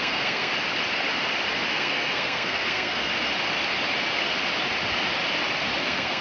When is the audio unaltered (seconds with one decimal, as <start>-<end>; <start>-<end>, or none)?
0.5-1.7; 3.1-5.8